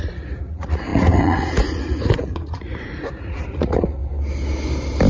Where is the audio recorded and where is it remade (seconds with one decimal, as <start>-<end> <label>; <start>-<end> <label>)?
0.0-4.0 remade; 4.0-5.1 recorded